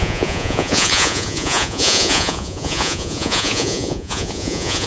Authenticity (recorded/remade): remade